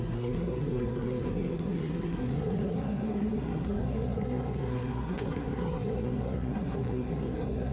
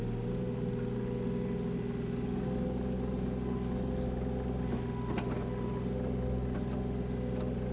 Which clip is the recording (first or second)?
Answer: second